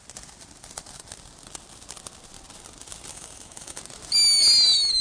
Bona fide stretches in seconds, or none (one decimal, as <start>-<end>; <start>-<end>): 0.0-3.1; 3.8-5.0